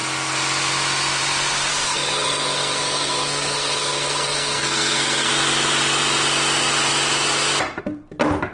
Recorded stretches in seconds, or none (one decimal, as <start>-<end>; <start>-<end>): 0.0-1.7; 5.3-8.5